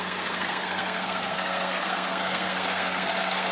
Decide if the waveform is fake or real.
fake